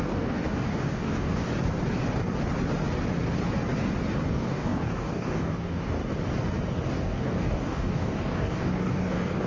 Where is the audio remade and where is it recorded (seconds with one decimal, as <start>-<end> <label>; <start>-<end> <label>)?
0.0-1.5 remade; 1.5-4.3 recorded; 4.3-6.0 remade; 6.0-6.9 recorded; 6.9-9.5 remade